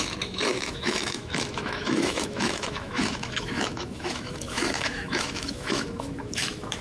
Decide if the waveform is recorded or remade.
remade